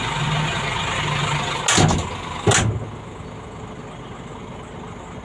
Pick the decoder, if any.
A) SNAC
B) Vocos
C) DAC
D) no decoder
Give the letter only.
D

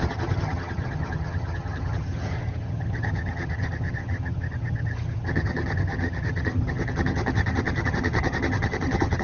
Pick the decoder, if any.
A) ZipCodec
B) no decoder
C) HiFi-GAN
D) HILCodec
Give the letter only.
C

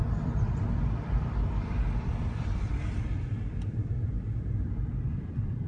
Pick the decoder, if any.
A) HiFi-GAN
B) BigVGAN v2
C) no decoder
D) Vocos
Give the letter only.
B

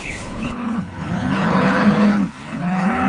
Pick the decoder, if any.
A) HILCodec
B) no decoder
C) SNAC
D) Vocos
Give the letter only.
A